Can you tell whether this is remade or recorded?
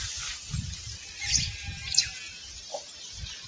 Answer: recorded